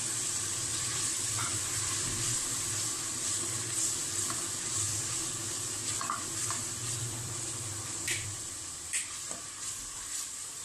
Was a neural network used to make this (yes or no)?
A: yes